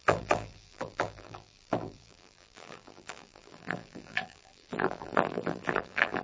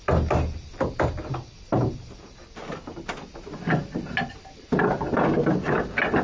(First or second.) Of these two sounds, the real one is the second